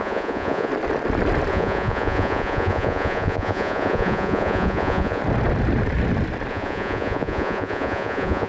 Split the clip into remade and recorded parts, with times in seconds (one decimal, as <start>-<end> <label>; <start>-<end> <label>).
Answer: 0.0-0.7 remade; 0.7-1.5 recorded; 1.5-5.2 remade; 5.2-6.5 recorded; 6.5-8.5 remade